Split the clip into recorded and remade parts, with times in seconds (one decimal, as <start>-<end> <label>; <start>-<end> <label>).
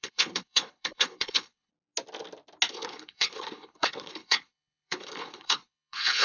0.0-1.7 remade; 1.7-2.7 recorded; 2.7-6.2 remade